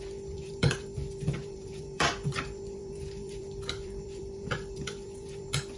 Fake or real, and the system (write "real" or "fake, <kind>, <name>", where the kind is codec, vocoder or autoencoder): fake, vocoder, BigVGAN v2